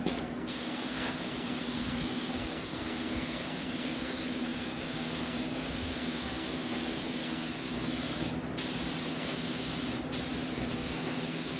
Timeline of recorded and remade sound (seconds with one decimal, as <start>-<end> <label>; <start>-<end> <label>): 0.0-8.4 remade; 8.4-9.1 recorded; 9.1-9.7 remade; 9.7-10.5 recorded; 10.5-11.6 remade